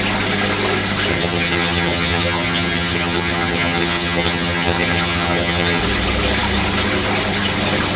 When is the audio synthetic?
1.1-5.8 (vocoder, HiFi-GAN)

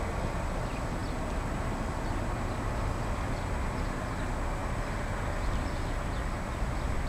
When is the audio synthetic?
none